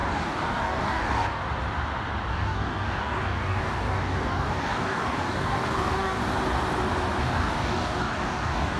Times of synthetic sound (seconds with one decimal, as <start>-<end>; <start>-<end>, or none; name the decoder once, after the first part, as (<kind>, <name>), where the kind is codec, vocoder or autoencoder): 0.0-1.4 (codec, DAC); 2.3-6.2; 7.2-8.8